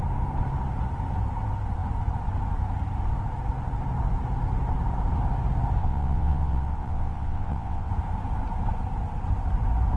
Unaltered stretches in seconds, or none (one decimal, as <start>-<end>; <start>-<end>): 0.0-5.8; 7.9-10.0